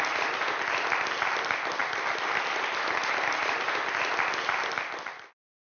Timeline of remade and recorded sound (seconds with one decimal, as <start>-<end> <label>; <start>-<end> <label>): 0.0-5.7 recorded